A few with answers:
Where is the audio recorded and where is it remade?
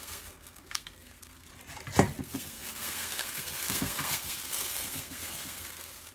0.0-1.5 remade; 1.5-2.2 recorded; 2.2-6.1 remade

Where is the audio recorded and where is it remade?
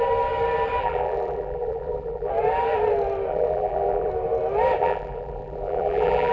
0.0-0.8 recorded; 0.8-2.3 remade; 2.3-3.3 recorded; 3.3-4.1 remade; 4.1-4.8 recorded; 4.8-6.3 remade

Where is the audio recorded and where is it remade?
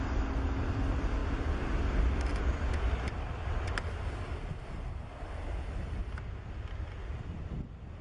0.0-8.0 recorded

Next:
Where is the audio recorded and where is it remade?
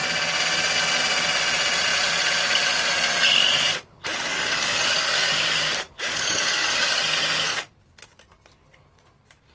0.0-4.3 recorded; 4.3-6.9 remade; 6.9-9.5 recorded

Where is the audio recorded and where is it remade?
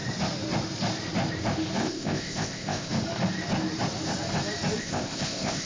0.0-1.8 recorded; 1.8-2.9 remade; 2.9-4.8 recorded; 4.8-5.7 remade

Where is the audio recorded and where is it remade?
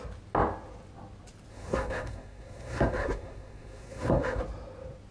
0.0-1.5 recorded; 1.5-4.4 remade; 4.4-5.1 recorded